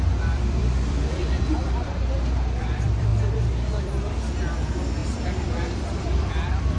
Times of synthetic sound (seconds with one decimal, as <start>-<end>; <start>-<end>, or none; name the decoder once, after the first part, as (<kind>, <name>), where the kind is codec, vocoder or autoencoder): 0.0-3.1 (vocoder, BigVGAN v2); 3.8-6.8